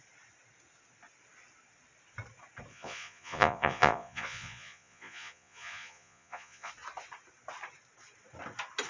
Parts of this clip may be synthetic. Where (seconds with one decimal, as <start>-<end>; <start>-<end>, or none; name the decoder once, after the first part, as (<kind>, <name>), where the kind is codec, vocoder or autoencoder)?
2.7-6.7 (vocoder, Vocos)